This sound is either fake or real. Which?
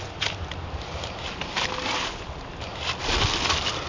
real